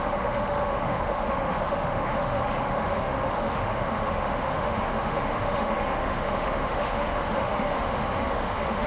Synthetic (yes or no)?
yes